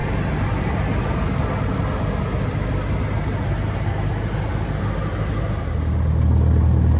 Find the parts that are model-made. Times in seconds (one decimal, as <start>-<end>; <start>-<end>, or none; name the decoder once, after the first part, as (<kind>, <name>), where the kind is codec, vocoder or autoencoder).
none

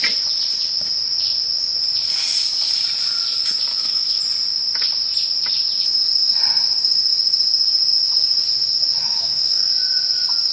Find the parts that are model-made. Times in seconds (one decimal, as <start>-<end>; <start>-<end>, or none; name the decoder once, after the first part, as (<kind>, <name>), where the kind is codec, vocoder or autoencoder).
3.7-4.2 (autoencoder, DAC-VAE); 9.0-9.7

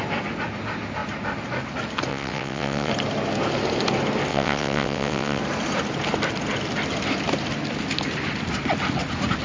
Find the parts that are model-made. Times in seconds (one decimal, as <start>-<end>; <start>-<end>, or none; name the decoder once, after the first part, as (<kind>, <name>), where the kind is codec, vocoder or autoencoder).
2.1-2.9 (vocoder, WaveNeXt); 4.3-5.4

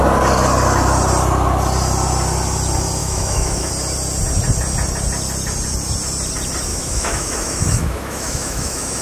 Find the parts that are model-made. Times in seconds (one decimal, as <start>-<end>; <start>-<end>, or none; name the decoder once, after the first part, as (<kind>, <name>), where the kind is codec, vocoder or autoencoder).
3.0-3.7 (autoencoder, DAC-VAE); 6.7-9.0

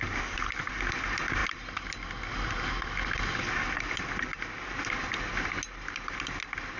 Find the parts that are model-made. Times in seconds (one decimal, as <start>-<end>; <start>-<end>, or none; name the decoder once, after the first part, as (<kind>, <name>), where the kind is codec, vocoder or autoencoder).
none

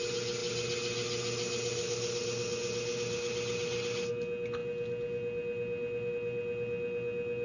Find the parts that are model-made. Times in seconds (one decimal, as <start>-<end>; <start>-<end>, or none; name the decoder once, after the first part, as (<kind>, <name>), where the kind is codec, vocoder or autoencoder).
none